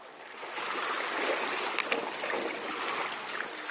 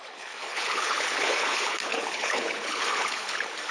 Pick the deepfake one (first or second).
second